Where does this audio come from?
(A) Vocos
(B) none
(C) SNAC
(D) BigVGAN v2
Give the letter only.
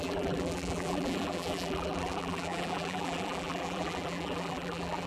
D